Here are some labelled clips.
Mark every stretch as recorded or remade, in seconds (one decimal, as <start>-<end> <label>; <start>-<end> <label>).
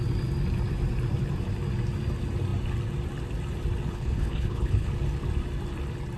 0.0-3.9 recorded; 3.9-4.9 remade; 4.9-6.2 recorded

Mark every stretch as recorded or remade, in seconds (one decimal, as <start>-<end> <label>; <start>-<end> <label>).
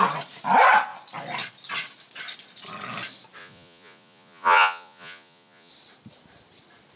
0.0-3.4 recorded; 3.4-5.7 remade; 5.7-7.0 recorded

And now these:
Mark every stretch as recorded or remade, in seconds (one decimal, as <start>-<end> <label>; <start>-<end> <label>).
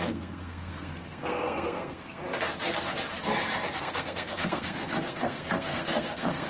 0.0-2.2 remade; 2.2-3.8 recorded; 3.8-6.5 remade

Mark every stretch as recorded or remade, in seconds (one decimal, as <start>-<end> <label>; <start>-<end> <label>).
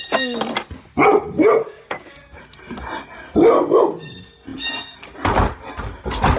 0.0-1.6 recorded; 1.6-2.4 remade; 2.4-6.4 recorded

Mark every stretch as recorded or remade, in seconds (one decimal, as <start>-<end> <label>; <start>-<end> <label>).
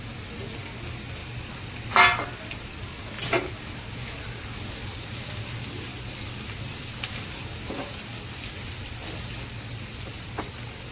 0.0-10.9 recorded